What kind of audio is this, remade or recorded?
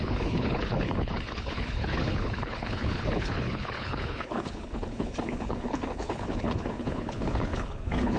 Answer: remade